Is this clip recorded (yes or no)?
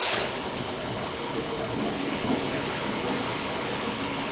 no